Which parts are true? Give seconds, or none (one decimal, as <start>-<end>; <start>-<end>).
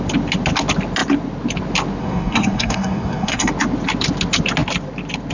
0.0-2.0; 3.5-5.3